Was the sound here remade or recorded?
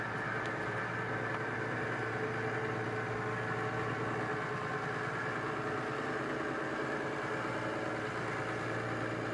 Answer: recorded